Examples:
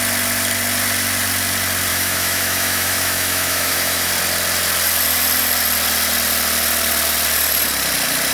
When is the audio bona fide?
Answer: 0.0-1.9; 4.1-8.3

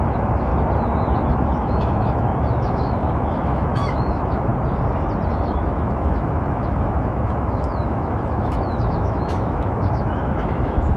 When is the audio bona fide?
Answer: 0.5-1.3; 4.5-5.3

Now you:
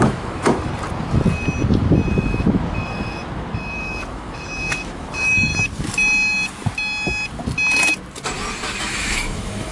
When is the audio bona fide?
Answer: 0.7-2.1; 5.5-8.8